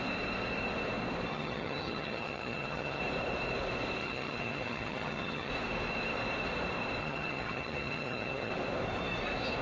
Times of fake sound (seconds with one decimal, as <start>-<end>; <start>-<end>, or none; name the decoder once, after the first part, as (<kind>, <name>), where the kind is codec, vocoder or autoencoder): 1.3-3.0 (vocoder, HiFi-GAN); 4.0-5.5; 7.0-8.5